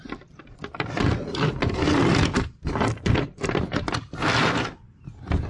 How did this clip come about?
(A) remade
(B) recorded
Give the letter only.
B